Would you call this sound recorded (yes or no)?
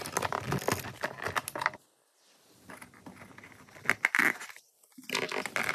yes